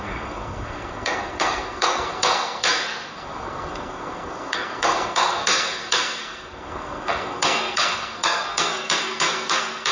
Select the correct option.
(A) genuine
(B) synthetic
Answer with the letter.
B